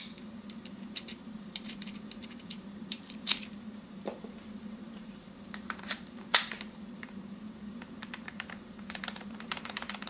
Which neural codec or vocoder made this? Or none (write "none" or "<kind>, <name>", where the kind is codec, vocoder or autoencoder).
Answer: vocoder, BigVGAN v2